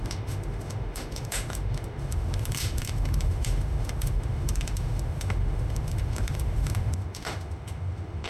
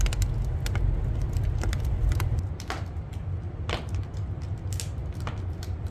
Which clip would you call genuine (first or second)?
second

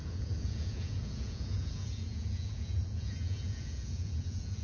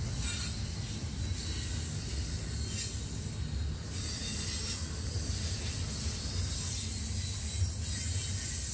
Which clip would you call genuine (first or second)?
second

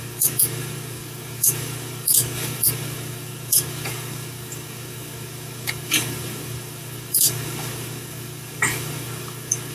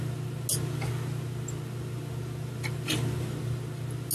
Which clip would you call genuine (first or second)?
second